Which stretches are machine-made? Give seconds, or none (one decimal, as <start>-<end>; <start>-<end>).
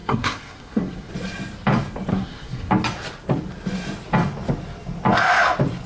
0.0-1.1; 2.1-2.7